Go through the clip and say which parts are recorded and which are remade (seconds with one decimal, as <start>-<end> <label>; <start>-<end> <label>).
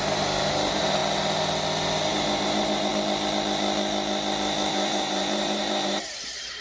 0.0-1.0 remade; 1.0-2.1 recorded; 2.1-2.9 remade; 2.9-4.7 recorded; 4.7-6.6 remade